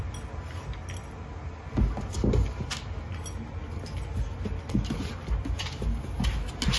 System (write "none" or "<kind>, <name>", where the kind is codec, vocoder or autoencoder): none